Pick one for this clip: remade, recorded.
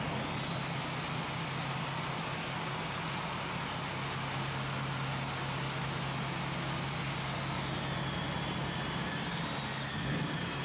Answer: recorded